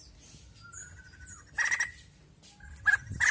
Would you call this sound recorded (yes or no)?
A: yes